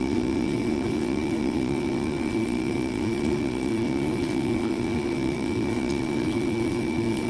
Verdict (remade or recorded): remade